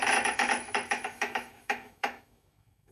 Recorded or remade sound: remade